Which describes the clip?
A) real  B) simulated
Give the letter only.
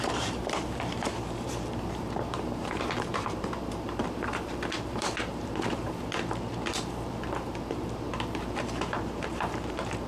B